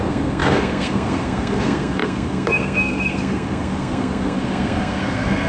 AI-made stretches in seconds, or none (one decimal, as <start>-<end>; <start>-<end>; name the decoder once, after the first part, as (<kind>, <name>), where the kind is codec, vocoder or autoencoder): 0.0-5.5 (codec, SNAC)